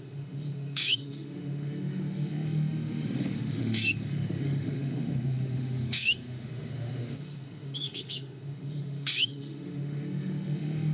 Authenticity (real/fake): fake